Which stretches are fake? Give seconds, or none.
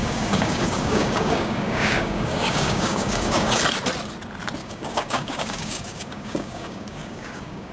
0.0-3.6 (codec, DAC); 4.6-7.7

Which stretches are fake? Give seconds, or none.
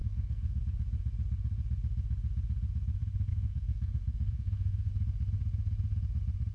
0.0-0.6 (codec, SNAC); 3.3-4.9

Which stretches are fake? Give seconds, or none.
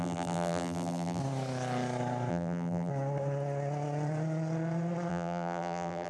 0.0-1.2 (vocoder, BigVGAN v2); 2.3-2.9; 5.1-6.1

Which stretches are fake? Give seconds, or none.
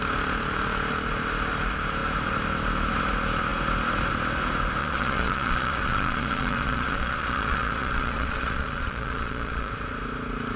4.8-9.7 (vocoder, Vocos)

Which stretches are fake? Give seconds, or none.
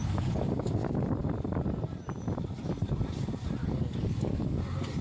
0.0-0.7 (codec, DAC); 3.6-4.6